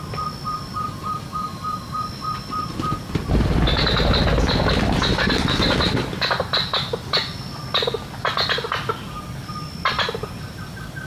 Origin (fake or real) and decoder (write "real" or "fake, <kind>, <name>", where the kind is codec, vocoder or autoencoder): real